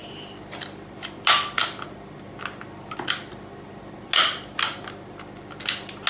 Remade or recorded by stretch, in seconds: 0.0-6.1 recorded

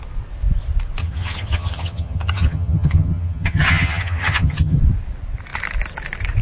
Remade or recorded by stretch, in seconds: 0.0-1.0 recorded; 1.0-4.8 remade; 4.8-6.4 recorded

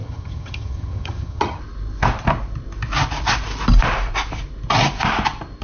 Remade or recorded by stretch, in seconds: 0.0-1.6 remade; 1.6-5.6 recorded

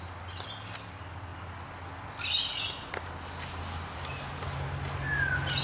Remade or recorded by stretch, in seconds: 0.0-5.6 recorded

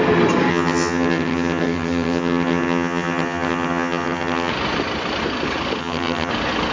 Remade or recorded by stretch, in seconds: 0.0-0.5 recorded; 0.5-4.5 remade; 4.5-5.8 recorded; 5.8-6.3 remade; 6.3-6.7 recorded

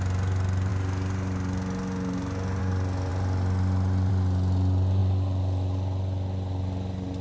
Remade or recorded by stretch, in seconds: 0.0-7.2 recorded

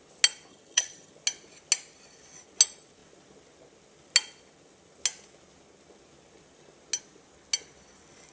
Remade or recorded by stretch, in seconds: 0.0-0.5 recorded; 0.5-1.1 remade; 1.1-8.3 recorded

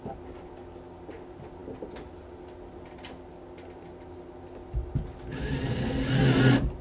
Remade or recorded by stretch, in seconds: 0.0-6.8 recorded